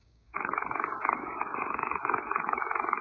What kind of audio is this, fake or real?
fake